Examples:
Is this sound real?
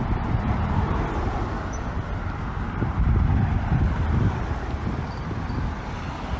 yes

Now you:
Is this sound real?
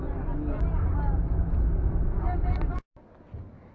yes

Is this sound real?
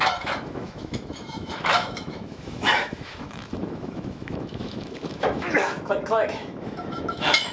no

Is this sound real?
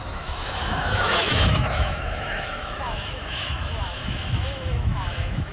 no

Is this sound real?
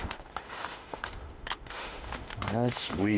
no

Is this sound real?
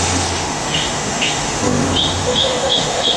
no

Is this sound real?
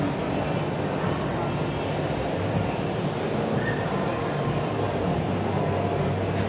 yes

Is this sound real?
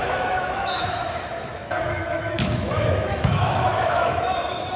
no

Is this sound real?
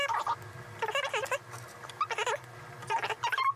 yes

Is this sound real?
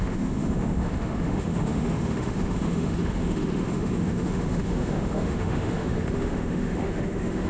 no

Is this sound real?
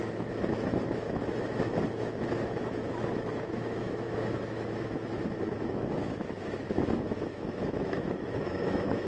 no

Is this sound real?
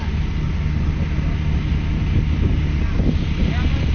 yes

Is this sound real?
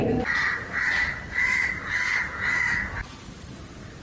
yes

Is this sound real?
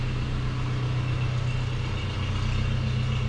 yes